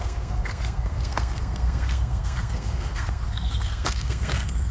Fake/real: fake